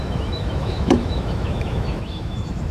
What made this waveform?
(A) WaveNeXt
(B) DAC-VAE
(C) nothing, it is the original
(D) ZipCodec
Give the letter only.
B